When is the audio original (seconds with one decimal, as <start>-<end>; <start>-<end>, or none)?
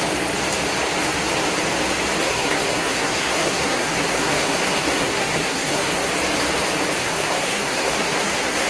0.0-2.2; 6.1-7.0